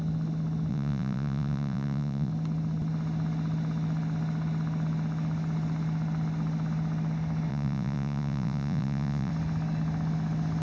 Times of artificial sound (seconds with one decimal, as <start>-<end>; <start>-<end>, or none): 0.7-2.3; 7.5-9.3